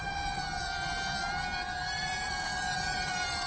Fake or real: real